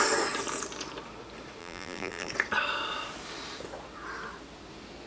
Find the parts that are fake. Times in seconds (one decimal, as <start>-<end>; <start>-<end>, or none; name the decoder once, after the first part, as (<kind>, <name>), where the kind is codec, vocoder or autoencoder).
1.6-2.3 (vocoder, BigVGAN v2)